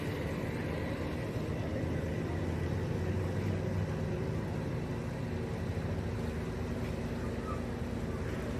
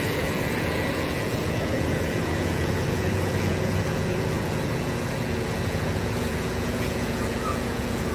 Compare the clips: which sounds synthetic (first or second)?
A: second